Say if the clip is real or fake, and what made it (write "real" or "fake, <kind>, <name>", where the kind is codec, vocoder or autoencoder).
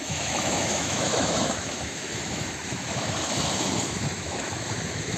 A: fake, autoencoder, DAC-VAE